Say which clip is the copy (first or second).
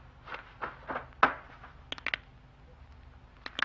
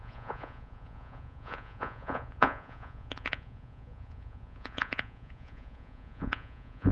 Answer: second